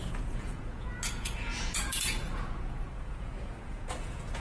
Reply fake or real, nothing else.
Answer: fake